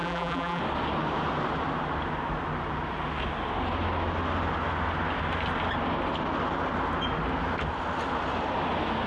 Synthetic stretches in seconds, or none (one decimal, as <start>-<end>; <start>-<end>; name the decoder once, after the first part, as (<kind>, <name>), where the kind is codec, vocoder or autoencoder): 0.0-0.6 (vocoder, BigVGAN v2)

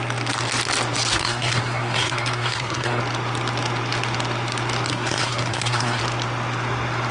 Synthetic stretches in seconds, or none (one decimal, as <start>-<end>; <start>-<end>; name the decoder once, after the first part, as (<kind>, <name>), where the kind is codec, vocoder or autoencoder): 1.1-3.0 (codec, SNAC); 4.9-6.0